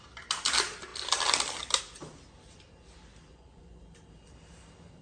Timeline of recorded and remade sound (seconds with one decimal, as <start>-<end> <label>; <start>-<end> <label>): 0.0-3.3 recorded; 3.3-3.8 remade; 3.8-5.0 recorded